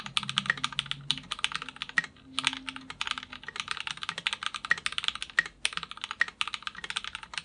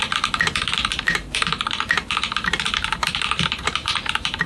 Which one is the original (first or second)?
first